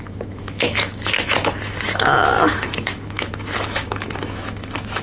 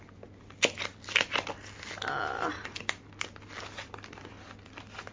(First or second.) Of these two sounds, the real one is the second